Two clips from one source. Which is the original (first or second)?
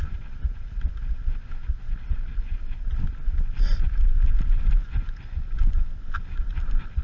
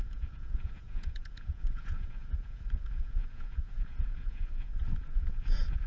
first